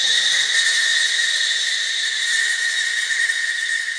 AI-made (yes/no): yes